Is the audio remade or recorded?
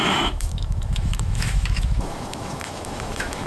remade